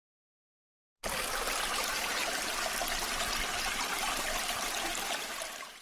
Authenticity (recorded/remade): recorded